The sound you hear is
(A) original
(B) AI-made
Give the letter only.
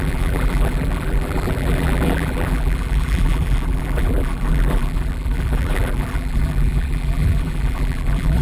B